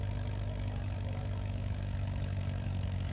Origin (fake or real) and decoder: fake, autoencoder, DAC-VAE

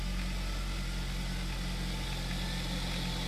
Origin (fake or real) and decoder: real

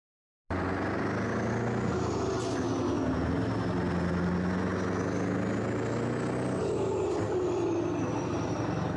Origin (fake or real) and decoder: real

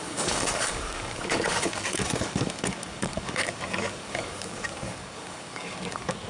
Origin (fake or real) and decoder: fake, codec, DAC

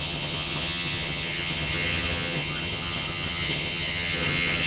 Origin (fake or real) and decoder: fake, vocoder, HiFi-GAN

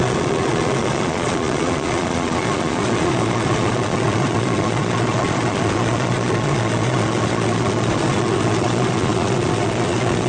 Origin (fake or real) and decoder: fake, vocoder, Vocos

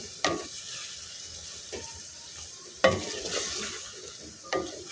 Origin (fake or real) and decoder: real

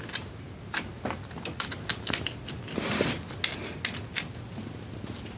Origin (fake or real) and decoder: real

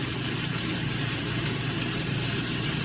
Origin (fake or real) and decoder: fake, vocoder, BigVGAN v2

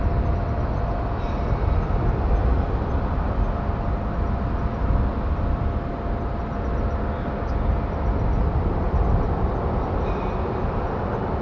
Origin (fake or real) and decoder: real